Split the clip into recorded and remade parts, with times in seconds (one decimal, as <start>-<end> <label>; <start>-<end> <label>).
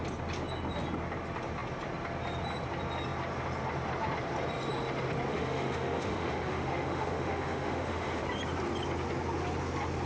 0.0-5.3 recorded; 5.3-8.2 remade; 8.2-10.1 recorded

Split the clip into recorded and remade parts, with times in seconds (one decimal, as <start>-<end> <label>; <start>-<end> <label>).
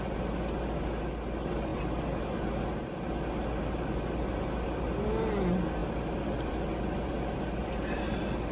0.0-8.5 recorded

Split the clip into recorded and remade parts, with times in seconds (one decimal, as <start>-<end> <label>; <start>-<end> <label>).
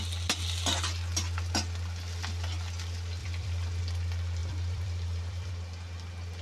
0.0-3.2 recorded; 3.2-3.8 remade; 3.8-4.4 recorded; 4.4-5.5 remade; 5.5-6.4 recorded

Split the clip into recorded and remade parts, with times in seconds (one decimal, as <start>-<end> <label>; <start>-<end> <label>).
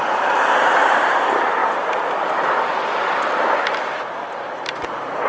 0.0-1.6 remade; 1.6-3.4 recorded; 3.4-5.3 remade